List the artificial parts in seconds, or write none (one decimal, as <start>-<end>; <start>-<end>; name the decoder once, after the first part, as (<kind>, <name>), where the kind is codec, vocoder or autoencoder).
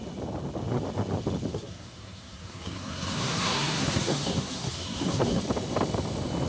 1.5-5.4 (codec, SNAC)